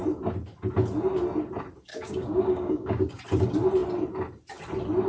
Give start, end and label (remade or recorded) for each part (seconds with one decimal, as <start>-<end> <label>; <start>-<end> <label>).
0.0-1.9 recorded; 1.9-3.2 remade; 3.2-5.1 recorded